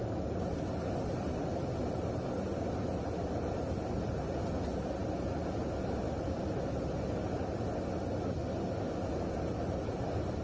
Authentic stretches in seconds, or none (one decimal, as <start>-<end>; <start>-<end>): 0.0-10.4